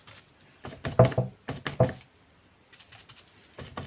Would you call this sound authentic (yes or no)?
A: yes